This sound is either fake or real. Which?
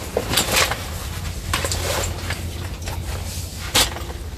real